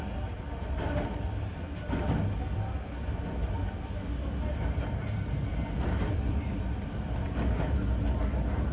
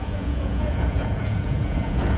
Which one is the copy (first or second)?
second